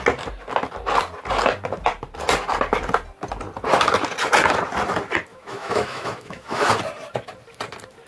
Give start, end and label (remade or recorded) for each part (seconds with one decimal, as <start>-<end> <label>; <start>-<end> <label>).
0.0-5.3 recorded; 5.3-6.7 remade; 6.7-8.1 recorded